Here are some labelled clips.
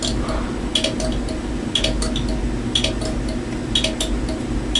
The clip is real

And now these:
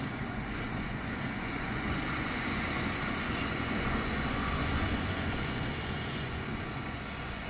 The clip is fake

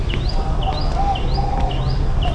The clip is real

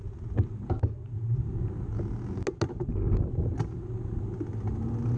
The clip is real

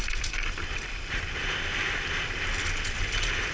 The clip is real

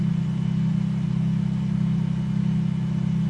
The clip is real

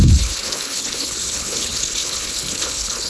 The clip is fake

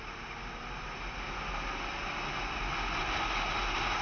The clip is real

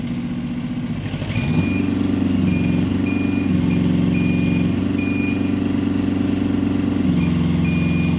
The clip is real